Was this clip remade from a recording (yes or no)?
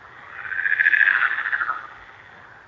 no